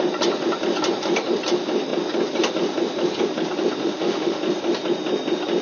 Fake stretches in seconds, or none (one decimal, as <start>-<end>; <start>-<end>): 3.8-4.4